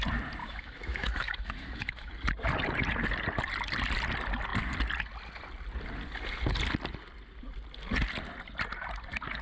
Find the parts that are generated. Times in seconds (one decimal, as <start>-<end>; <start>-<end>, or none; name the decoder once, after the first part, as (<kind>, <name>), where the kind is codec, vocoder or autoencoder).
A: 0.4-2.1 (autoencoder, DAC-VAE)